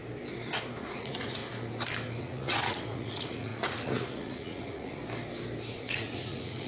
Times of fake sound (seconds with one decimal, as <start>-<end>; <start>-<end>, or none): 0.8-1.4; 2.2-5.0; 5.7-6.7